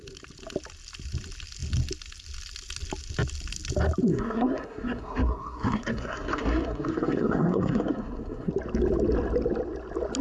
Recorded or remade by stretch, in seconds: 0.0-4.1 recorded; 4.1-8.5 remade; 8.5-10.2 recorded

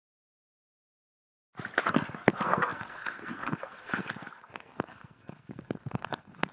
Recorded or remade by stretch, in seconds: 0.0-0.7 remade; 0.7-1.9 recorded; 1.9-6.5 remade

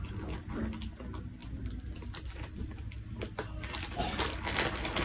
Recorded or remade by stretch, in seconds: 0.0-5.0 recorded

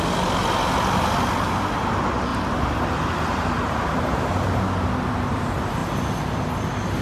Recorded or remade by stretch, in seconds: 0.0-2.3 recorded; 2.3-4.6 remade; 4.6-7.0 recorded

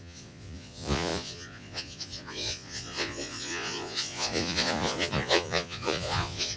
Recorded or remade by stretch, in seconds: 0.0-6.6 remade

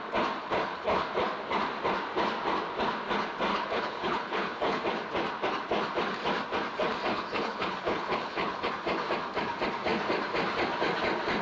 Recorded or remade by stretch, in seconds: 0.0-0.4 recorded; 0.4-1.1 remade; 1.1-3.5 recorded; 3.5-4.8 remade; 4.8-7.1 recorded; 7.1-8.7 remade; 8.7-11.4 recorded

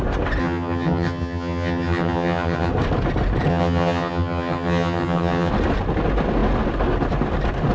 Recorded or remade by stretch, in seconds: 0.0-0.4 recorded; 0.4-2.7 remade; 2.7-3.5 recorded; 3.5-5.5 remade; 5.5-7.7 recorded